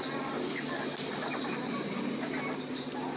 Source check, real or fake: real